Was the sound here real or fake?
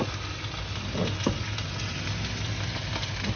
real